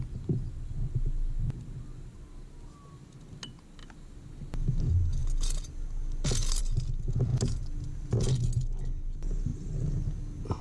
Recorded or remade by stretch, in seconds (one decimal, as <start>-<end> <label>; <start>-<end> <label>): 0.0-7.3 recorded; 7.3-8.2 remade; 8.2-10.6 recorded